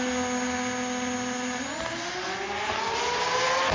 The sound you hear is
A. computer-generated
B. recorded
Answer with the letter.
B